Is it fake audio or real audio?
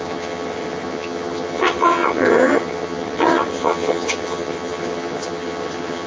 fake